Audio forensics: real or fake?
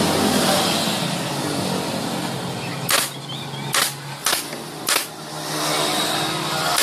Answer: real